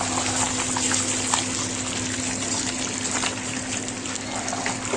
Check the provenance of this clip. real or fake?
real